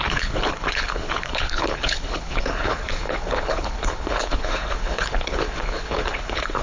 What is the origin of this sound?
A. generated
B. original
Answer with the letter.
A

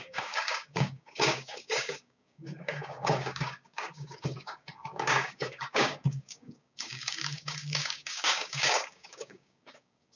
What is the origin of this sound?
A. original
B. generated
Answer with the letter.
B